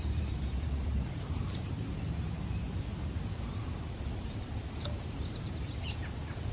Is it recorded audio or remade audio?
remade